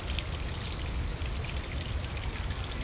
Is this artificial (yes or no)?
no